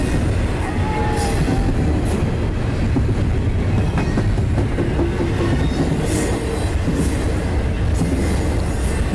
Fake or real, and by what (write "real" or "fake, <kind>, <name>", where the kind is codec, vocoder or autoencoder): real